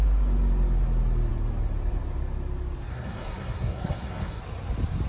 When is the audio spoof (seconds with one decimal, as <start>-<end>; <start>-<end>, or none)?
2.9-4.4